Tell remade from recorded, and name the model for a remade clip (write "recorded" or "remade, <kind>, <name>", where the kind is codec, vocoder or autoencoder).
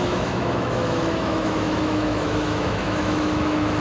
remade, autoencoder, DAC-VAE